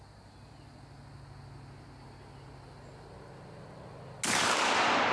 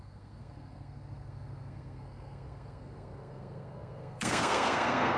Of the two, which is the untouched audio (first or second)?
first